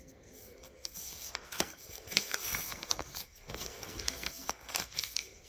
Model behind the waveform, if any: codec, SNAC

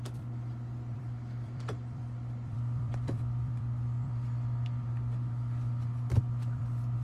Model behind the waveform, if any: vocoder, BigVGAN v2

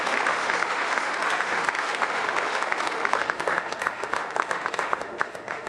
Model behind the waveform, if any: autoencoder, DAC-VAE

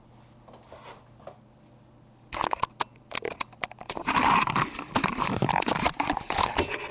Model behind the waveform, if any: none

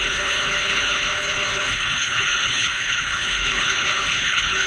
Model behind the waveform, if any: codec, HILCodec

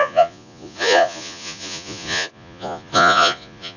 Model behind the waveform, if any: vocoder, Vocos